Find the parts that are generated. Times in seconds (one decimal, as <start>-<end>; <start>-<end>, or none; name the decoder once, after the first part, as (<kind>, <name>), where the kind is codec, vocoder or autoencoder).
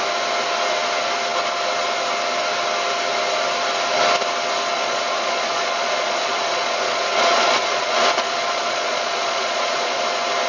4.7-10.0 (vocoder, Vocos)